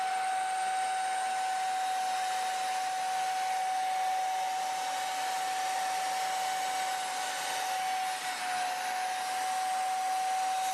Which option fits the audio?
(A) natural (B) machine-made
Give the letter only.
A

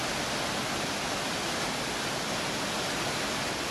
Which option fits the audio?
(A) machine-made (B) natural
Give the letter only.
B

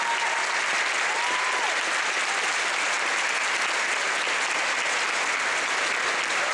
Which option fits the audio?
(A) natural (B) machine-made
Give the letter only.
A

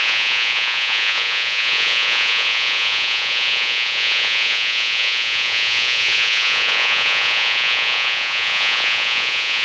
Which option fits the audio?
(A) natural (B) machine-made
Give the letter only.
B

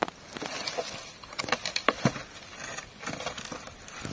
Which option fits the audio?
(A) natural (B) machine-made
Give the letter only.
A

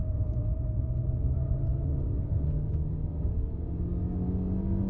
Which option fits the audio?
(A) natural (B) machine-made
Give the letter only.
A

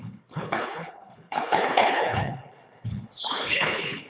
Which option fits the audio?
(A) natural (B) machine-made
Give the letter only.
B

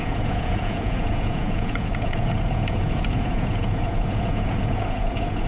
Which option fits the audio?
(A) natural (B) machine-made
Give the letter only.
B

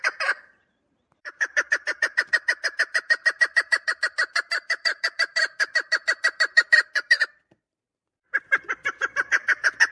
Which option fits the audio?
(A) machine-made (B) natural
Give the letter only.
A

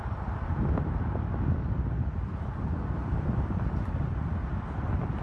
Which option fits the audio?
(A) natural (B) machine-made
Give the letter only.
A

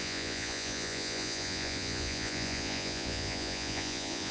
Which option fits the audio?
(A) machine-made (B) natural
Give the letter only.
A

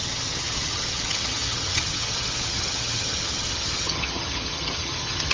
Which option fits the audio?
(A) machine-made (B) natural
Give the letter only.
A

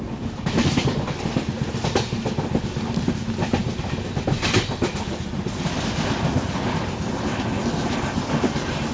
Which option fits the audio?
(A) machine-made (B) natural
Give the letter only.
B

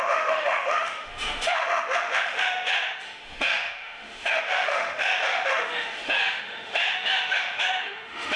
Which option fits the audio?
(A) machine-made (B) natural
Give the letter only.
A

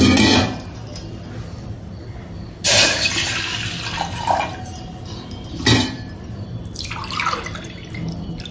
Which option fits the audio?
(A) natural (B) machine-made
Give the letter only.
A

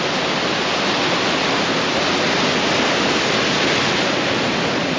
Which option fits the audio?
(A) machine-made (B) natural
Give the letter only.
B